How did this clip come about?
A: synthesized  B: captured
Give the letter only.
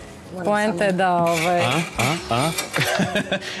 B